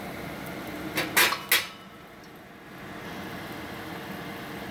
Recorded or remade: recorded